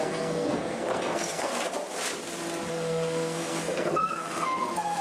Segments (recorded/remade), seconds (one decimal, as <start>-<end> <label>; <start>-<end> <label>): 0.0-1.5 remade; 1.5-2.7 recorded; 2.7-5.0 remade